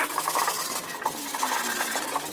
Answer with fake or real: real